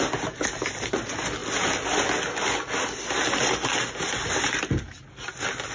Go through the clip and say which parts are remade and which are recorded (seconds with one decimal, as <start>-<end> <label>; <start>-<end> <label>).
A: 0.0-5.7 recorded